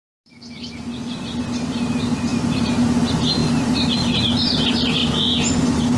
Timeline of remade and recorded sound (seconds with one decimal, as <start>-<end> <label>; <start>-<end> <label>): 0.0-6.0 recorded